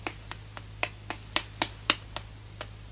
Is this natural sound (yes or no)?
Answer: yes